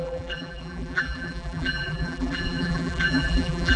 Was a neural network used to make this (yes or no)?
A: yes